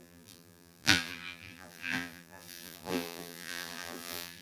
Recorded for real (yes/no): no